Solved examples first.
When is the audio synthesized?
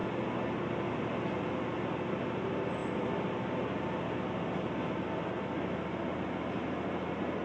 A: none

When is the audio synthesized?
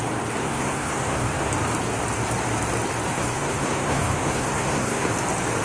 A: 0.4-1.5 (codec, SNAC); 3.1-5.1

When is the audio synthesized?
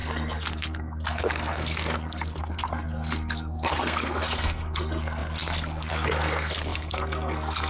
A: 0.0-7.7 (codec, SNAC)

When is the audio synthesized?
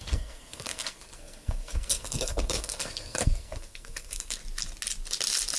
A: 0.0-4.4 (codec, SNAC)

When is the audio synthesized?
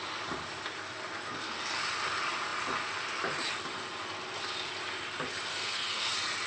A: 1.2-1.8 (codec, SNAC); 5.5-6.1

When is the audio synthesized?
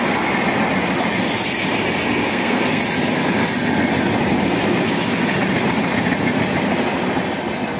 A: 2.3-2.8 (codec, SNAC)